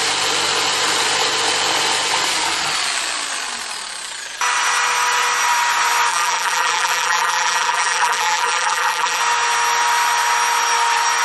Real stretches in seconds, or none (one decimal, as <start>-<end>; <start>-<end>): 0.0-6.1; 9.2-11.2